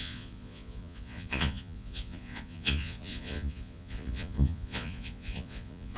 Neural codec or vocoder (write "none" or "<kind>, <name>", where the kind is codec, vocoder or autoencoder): vocoder, Vocos